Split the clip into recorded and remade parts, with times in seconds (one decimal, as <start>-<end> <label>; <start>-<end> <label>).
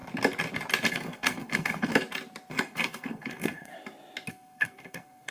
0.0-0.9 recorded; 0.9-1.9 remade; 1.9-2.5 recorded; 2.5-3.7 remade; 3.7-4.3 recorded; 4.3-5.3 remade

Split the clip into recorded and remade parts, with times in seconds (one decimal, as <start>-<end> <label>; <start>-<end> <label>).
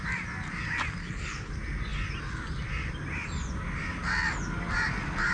0.0-1.0 recorded; 1.0-1.5 remade; 1.5-5.3 recorded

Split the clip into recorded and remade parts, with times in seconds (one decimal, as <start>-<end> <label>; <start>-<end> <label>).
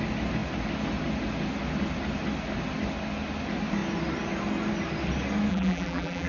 0.0-5.5 recorded; 5.5-6.3 remade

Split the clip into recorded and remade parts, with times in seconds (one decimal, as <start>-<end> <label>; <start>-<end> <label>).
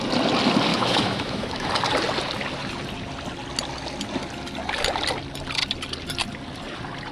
0.0-0.7 recorded; 0.7-1.7 remade; 1.7-7.1 recorded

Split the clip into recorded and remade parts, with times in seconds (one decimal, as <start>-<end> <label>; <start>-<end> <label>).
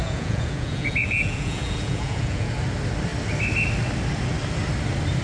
0.0-2.5 remade; 2.5-5.2 recorded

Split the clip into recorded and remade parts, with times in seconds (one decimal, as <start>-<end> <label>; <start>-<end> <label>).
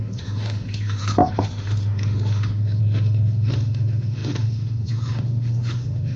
0.0-6.2 remade